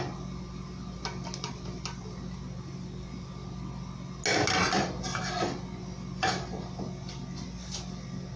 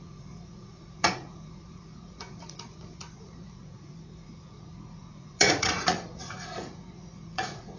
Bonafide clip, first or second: first